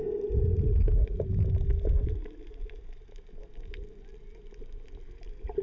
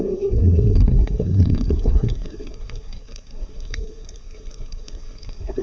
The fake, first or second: second